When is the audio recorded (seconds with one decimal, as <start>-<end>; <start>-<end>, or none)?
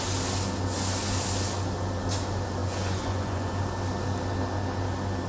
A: 0.0-2.6; 3.5-5.3